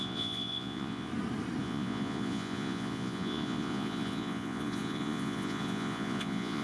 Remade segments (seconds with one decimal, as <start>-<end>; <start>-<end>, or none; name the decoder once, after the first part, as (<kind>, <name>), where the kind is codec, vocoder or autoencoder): 0.0-1.1 (vocoder, Vocos); 1.6-6.6